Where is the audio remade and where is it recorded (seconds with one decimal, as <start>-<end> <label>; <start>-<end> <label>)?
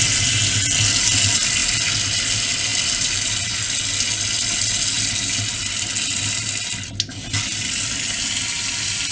0.0-9.1 recorded